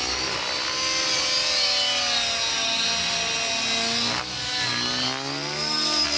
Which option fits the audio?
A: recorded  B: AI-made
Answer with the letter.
A